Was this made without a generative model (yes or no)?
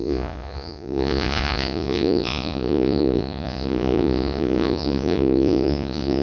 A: no